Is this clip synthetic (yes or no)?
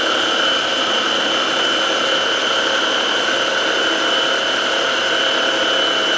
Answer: no